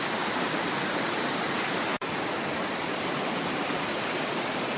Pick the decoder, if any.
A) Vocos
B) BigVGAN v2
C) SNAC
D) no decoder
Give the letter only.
D